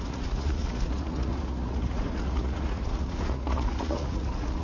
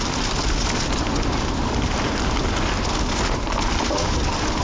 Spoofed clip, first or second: first